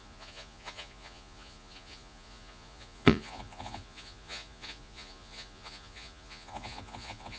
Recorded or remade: remade